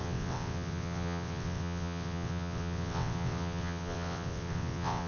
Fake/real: fake